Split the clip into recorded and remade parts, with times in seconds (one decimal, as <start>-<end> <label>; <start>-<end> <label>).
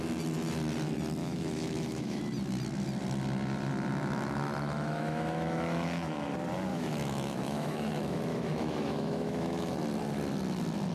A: 0.0-1.2 recorded; 1.2-2.2 remade; 2.2-3.9 recorded; 3.9-6.3 remade; 6.3-6.7 recorded; 6.7-9.7 remade; 9.7-10.9 recorded